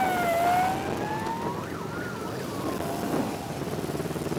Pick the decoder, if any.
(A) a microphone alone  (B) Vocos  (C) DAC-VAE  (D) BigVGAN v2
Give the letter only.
A